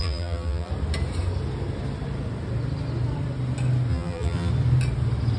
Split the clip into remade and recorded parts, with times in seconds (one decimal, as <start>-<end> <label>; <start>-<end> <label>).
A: 0.0-0.7 remade; 0.7-3.9 recorded; 3.9-4.5 remade; 4.5-5.4 recorded